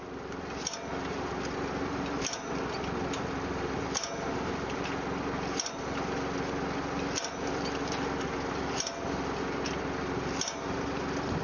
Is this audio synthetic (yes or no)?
no